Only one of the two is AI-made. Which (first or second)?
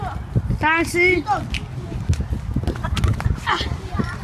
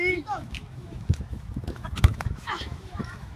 second